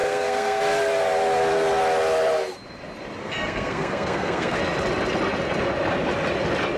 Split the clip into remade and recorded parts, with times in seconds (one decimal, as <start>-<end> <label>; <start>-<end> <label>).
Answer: 0.0-0.6 remade; 0.6-3.2 recorded; 3.2-4.6 remade; 4.6-6.8 recorded